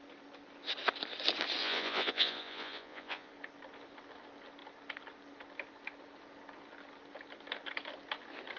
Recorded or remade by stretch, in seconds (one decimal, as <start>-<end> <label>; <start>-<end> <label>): 0.0-1.6 recorded; 1.6-3.3 remade; 3.3-8.6 recorded